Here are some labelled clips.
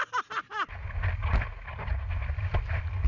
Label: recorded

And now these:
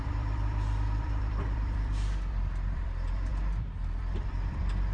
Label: remade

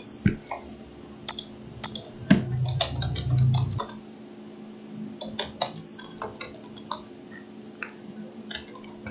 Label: recorded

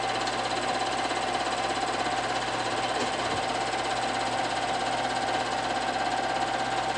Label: recorded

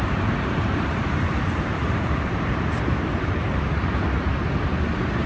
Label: remade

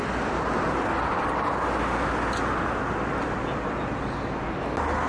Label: recorded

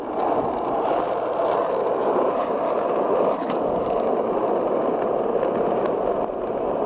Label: recorded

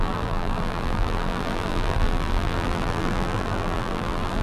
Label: remade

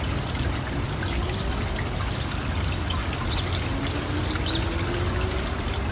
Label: recorded